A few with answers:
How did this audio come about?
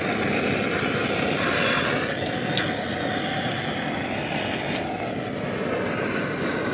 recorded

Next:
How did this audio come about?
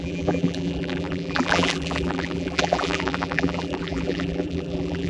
remade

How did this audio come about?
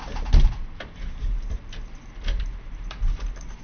remade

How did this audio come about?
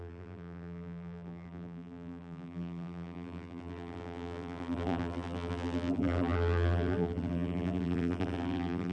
remade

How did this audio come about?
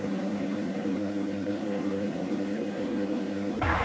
remade